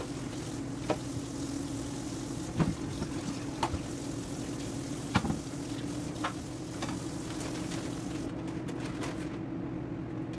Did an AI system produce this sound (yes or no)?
no